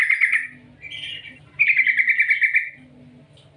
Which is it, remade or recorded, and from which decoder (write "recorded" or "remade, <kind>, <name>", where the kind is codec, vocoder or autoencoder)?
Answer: recorded